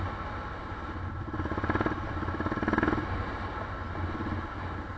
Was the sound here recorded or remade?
recorded